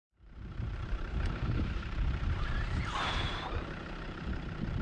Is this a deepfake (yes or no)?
yes